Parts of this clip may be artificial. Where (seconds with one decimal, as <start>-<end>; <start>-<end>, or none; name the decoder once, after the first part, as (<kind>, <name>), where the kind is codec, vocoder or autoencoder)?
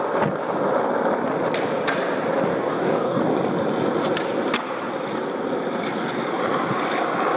2.5-3.2 (codec, DAC)